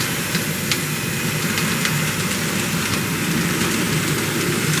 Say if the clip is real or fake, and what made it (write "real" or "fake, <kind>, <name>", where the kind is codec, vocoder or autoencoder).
real